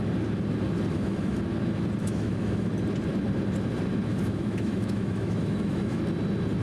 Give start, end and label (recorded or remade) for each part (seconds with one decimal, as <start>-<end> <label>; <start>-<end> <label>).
0.0-0.9 recorded; 0.9-1.4 remade; 1.4-2.0 recorded; 2.0-2.7 remade; 2.7-4.1 recorded; 4.1-6.0 remade; 6.0-6.6 recorded